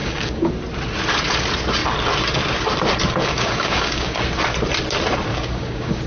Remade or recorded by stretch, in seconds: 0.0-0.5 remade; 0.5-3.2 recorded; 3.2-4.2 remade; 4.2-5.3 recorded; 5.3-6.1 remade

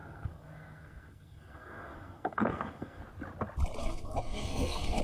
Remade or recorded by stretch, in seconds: 0.0-3.0 remade; 3.0-3.8 recorded; 3.8-5.0 remade

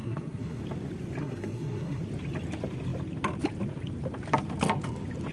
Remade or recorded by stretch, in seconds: 0.0-0.6 remade; 0.6-1.2 recorded; 1.2-2.0 remade; 2.0-5.3 recorded

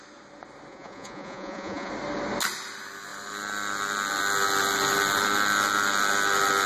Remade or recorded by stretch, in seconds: 0.0-0.7 recorded; 0.7-1.9 remade; 1.9-6.7 recorded

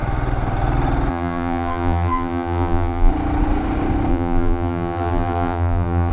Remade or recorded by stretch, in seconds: 0.0-1.1 recorded; 1.1-3.1 remade; 3.1-4.1 recorded; 4.1-6.1 remade

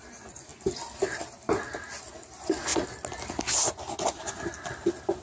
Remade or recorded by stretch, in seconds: 0.0-5.2 recorded

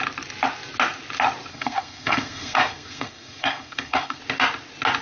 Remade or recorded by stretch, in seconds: 0.0-1.5 recorded; 1.5-4.2 remade; 4.2-5.0 recorded